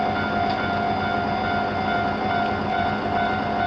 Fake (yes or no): no